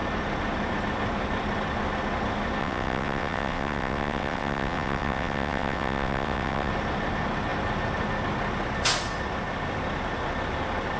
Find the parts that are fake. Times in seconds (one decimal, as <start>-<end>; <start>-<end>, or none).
2.6-6.7